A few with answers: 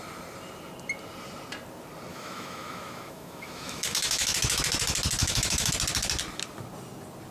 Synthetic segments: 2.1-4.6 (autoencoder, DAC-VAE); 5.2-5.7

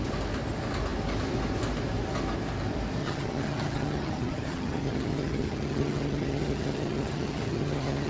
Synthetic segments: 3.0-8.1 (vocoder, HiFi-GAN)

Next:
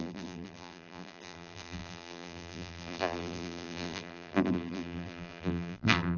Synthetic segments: 0.0-6.2 (vocoder, BigVGAN v2)

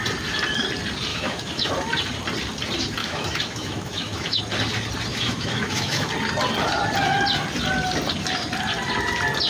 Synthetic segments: 1.1-1.7 (autoencoder, DAC-VAE); 3.0-4.4; 5.1-6.1

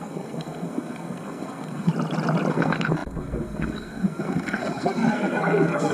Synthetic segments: 0.0-1.9 (codec, SNAC); 2.5-5.9

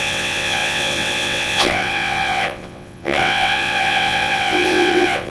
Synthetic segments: 0.0-5.3 (vocoder, WaveNeXt)